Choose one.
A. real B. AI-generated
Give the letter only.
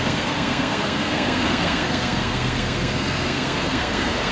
B